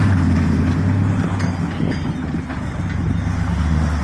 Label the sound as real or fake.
real